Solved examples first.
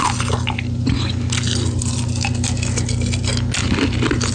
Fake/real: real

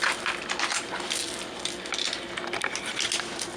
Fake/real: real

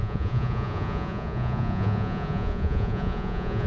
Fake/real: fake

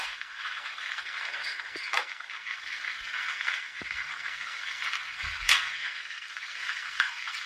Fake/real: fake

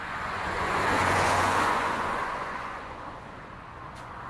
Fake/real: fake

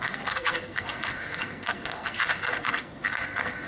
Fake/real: fake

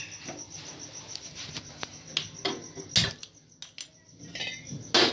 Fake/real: real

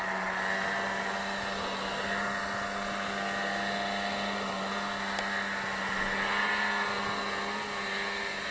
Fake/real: real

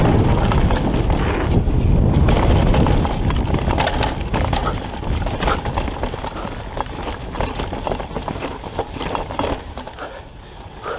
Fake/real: real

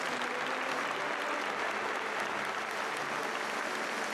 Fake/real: real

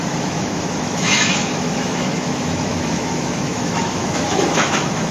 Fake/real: fake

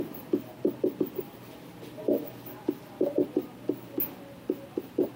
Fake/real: real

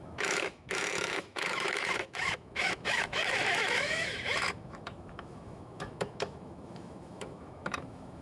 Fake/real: fake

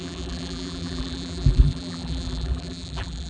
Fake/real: fake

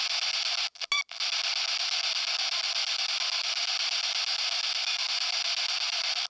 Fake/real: real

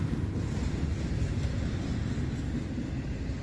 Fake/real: real